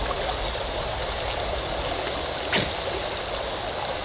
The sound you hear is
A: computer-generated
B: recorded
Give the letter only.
B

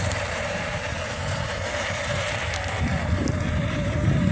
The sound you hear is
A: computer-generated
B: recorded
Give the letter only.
A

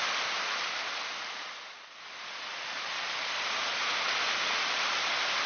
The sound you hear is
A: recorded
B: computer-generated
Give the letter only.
A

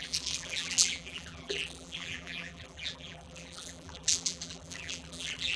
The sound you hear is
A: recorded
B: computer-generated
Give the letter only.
B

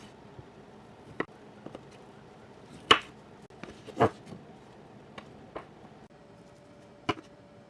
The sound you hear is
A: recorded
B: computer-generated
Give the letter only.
A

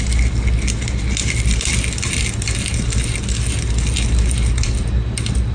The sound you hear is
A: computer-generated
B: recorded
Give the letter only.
B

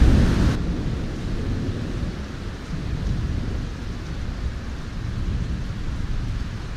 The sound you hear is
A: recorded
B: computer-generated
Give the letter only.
A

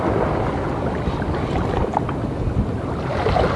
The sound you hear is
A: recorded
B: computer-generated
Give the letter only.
A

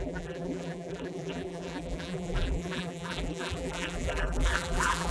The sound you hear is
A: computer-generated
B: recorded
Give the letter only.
A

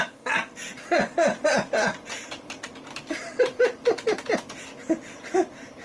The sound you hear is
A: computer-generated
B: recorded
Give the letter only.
A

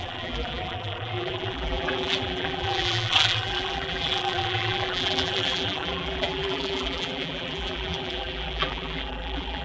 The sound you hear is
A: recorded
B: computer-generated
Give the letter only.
B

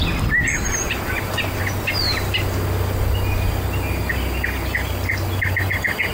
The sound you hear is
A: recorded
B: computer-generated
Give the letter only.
A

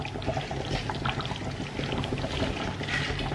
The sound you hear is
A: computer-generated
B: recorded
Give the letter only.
B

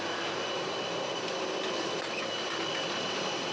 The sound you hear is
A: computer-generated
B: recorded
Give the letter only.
B